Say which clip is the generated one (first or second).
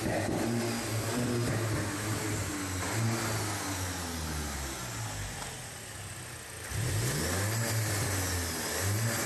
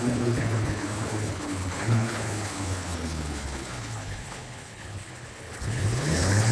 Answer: second